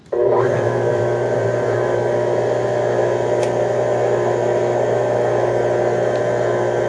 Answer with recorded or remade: recorded